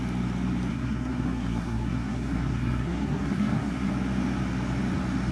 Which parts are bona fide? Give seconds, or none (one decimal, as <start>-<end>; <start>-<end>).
0.0-0.7; 3.9-5.3